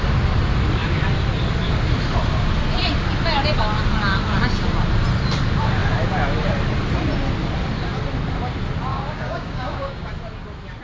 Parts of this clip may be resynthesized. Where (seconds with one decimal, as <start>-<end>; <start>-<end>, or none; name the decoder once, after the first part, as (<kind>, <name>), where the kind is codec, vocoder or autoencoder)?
8.9-10.1 (codec, DAC)